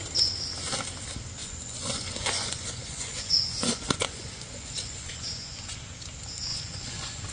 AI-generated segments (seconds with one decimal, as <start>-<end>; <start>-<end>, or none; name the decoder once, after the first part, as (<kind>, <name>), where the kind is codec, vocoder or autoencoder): 1.4-5.8 (vocoder, Vocos); 6.5-7.3